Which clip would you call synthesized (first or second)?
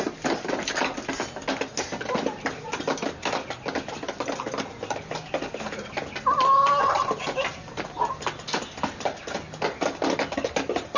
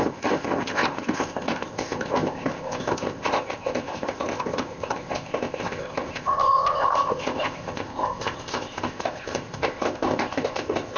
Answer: second